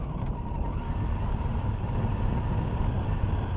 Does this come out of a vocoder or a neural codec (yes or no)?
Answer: no